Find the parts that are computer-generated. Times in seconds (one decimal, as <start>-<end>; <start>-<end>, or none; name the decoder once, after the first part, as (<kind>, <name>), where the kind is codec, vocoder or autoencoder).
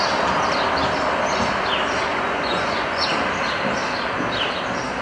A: 2.1-3.0 (vocoder, Vocos)